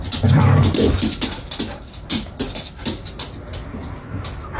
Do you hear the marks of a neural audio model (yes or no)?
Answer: no